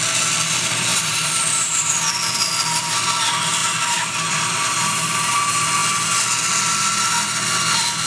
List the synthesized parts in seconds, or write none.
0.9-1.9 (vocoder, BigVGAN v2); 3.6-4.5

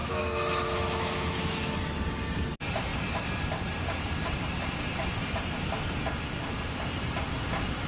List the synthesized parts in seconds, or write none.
0.0-1.7 (autoencoder, DAC-VAE)

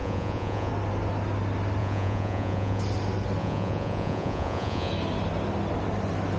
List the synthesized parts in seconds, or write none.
0.0-0.7 (vocoder, Vocos); 1.8-2.8; 3.4-4.9

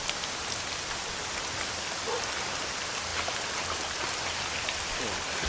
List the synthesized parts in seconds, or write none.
none

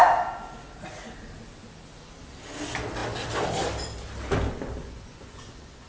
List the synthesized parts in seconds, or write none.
4.8-5.9 (vocoder, Vocos)

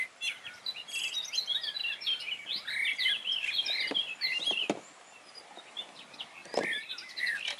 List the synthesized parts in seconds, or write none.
0.0-7.6 (vocoder, BigVGAN v2)